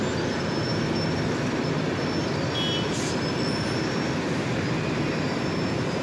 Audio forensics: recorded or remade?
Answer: recorded